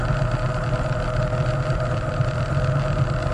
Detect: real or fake real